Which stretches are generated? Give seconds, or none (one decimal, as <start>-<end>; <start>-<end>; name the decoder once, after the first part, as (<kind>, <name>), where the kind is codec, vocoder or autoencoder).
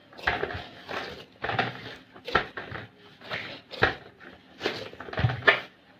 2.2-3.3 (vocoder, BigVGAN v2)